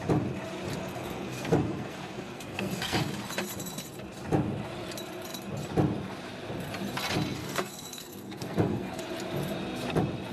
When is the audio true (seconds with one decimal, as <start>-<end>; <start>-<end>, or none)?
0.0-0.9; 3.1-7.4; 9.0-10.3